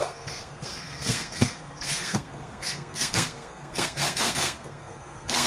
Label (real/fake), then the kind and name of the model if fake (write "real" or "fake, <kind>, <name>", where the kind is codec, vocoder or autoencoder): fake, codec, SNAC